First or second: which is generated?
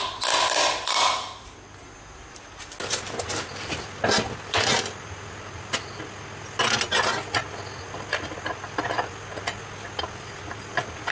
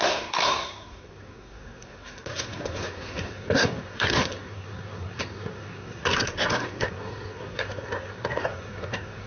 second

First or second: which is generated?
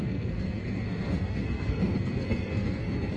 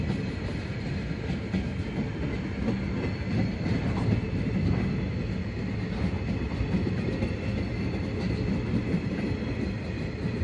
first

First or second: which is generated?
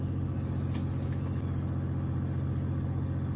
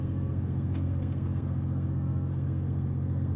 second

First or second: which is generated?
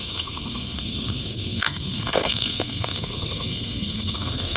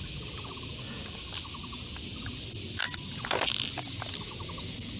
first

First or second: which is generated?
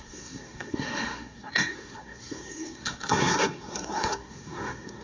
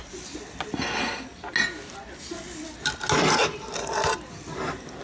first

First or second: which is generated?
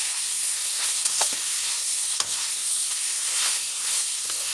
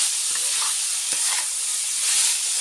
first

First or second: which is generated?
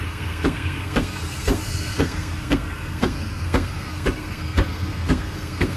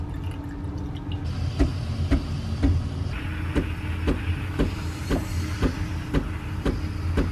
first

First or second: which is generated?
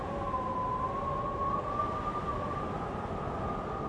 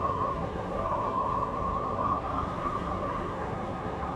second